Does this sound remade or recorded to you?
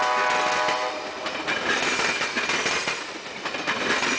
recorded